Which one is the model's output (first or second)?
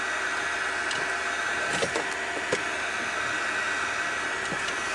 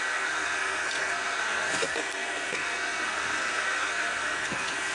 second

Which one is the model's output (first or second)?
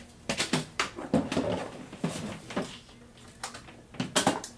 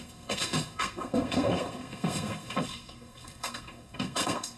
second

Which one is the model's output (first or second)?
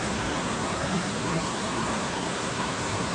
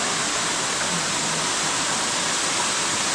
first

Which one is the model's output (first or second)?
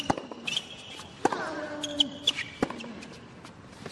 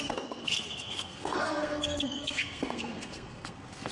second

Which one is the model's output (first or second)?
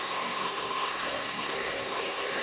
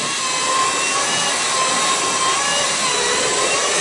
first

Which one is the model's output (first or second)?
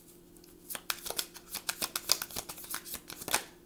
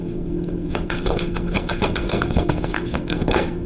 second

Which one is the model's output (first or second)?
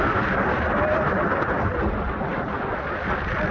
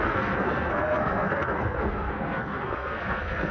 second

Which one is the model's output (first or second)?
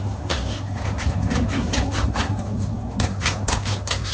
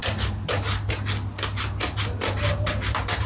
first